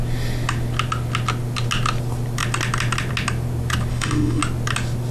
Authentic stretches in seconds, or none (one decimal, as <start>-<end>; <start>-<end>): 0.0-3.9; 4.4-5.1